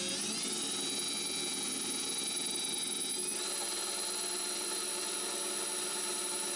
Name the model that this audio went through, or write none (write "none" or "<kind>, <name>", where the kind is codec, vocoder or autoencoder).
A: none